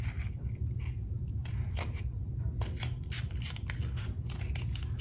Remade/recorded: recorded